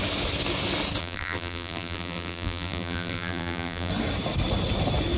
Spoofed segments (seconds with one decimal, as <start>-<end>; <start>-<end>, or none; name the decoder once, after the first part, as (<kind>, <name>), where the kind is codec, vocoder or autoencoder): 1.0-3.9 (vocoder, BigVGAN v2)